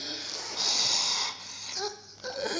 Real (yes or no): yes